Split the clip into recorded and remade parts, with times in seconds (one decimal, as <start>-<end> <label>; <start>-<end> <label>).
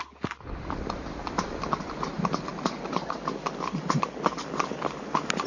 0.0-5.5 recorded